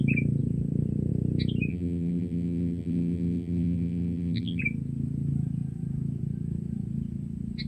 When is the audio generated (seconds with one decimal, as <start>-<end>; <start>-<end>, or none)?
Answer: 1.7-4.6